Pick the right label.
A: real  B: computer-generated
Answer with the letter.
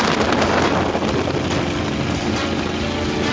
A